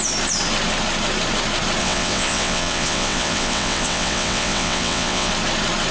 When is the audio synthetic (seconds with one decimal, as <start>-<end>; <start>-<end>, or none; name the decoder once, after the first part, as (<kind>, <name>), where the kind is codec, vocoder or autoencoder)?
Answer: 1.8-5.3 (vocoder, WaveNeXt)